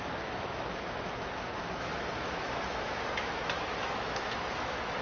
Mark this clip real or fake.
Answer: fake